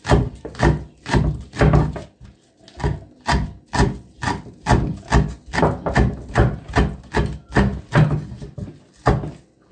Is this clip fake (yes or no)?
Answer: no